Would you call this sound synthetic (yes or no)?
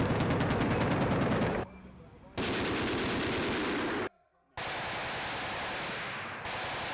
no